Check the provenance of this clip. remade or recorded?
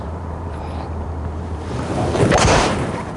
remade